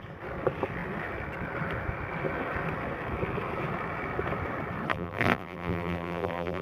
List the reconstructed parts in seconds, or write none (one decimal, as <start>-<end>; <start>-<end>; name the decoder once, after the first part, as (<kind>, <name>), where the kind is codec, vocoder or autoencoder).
4.9-6.6 (vocoder, BigVGAN v2)